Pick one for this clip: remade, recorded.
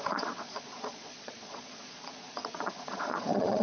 remade